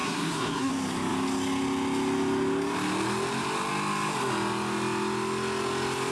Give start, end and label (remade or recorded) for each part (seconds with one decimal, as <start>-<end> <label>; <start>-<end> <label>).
0.0-0.7 remade; 0.7-6.1 recorded